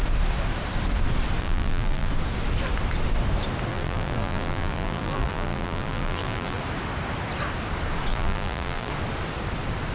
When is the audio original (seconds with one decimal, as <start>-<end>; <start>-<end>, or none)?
0.0-1.4; 2.1-3.7; 6.6-8.1; 8.9-9.9